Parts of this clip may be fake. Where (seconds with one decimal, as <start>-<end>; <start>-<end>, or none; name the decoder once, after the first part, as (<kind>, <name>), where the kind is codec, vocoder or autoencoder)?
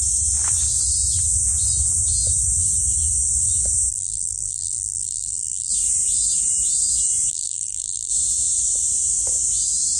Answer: 3.9-5.7 (vocoder, BigVGAN v2); 7.3-8.1